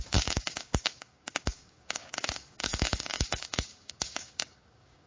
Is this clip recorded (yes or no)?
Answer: no